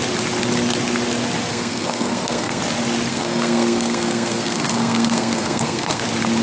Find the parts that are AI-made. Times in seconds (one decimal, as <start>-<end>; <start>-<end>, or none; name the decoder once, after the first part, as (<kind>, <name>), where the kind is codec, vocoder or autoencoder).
1.5-2.6 (codec, SNAC); 3.1-6.0